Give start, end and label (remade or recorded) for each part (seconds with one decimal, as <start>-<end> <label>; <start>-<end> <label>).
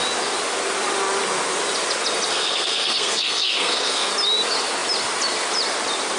0.0-2.3 recorded; 2.3-4.1 remade; 4.1-6.2 recorded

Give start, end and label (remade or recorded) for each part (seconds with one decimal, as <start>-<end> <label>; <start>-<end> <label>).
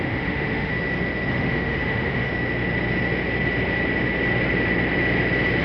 0.0-0.7 remade; 0.7-1.3 recorded; 1.3-2.3 remade; 2.3-5.6 recorded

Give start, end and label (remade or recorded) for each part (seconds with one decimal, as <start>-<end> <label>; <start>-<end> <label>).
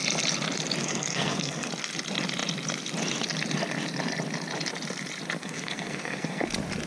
0.0-0.8 recorded; 0.8-1.7 remade; 1.7-5.4 recorded; 5.4-6.5 remade; 6.5-6.9 recorded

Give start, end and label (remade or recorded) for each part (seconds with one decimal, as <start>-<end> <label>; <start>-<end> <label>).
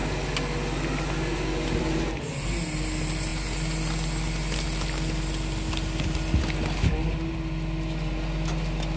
0.0-9.0 recorded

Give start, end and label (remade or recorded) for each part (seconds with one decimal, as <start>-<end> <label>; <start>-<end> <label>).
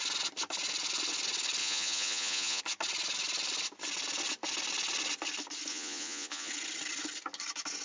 0.0-1.6 recorded; 1.6-2.6 remade; 2.6-5.7 recorded; 5.7-6.5 remade; 6.5-7.8 recorded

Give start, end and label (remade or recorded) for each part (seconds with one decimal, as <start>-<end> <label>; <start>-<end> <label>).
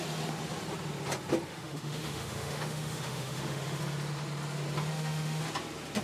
0.0-1.5 recorded; 1.5-3.8 remade; 3.8-4.9 recorded; 4.9-5.4 remade; 5.4-6.0 recorded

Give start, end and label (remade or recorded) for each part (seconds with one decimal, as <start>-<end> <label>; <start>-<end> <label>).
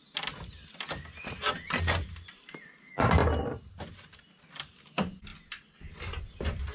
0.0-6.7 recorded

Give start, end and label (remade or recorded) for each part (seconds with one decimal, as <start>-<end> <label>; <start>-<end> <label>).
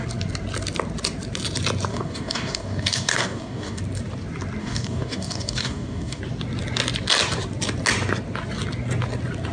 0.0-1.9 recorded; 1.9-3.8 remade; 3.8-4.6 recorded; 4.6-6.2 remade; 6.2-9.5 recorded